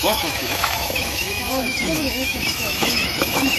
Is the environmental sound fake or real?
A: fake